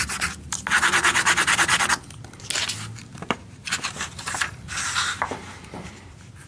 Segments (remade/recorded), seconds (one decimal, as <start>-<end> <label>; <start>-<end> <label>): 0.0-3.1 recorded; 3.1-4.5 remade; 4.5-5.1 recorded; 5.1-6.5 remade